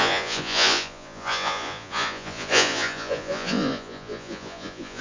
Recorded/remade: remade